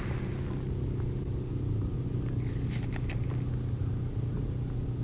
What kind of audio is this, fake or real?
real